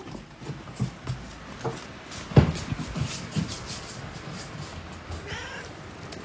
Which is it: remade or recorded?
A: recorded